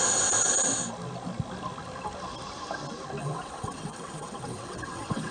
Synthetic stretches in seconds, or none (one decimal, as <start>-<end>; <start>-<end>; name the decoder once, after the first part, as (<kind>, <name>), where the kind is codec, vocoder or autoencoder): 3.2-5.3 (vocoder, WaveNeXt)